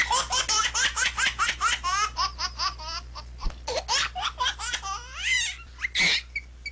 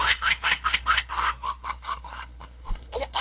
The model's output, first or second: second